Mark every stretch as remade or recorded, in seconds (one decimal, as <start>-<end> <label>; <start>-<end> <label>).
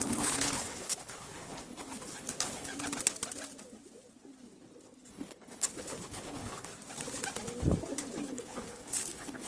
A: 0.0-2.7 remade; 2.7-5.1 recorded; 5.1-6.7 remade; 6.7-8.3 recorded; 8.3-9.5 remade